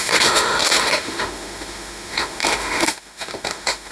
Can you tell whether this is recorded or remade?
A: remade